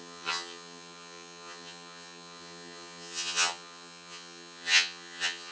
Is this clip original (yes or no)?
no